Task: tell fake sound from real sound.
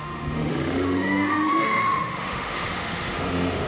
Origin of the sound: fake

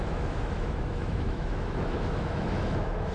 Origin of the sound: fake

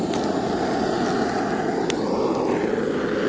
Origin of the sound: real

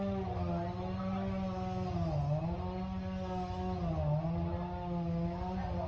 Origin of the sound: real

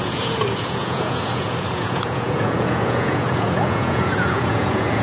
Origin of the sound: fake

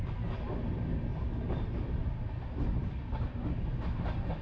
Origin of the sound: real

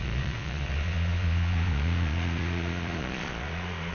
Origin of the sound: fake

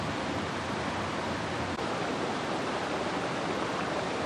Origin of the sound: real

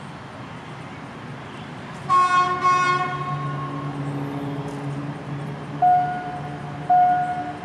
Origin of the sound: real